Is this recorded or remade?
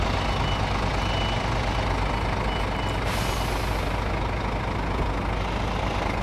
recorded